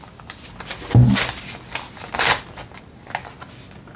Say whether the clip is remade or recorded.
recorded